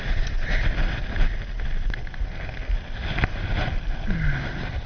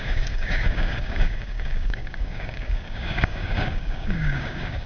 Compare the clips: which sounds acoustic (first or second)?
first